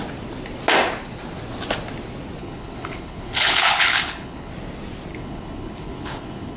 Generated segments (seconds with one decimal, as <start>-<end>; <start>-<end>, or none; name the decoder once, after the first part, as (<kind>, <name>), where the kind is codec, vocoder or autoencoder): 2.4-4.5 (codec, HILCodec); 5.1-6.6